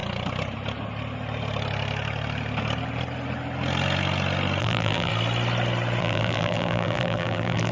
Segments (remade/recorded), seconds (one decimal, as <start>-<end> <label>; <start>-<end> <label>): 0.0-4.6 recorded; 4.6-5.1 remade; 5.1-6.0 recorded; 6.0-7.7 remade